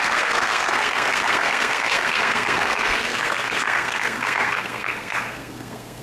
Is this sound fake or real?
fake